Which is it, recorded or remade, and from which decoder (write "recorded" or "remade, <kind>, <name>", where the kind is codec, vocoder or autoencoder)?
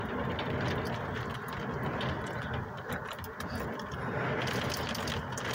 recorded